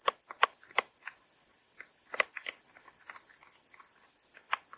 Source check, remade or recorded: recorded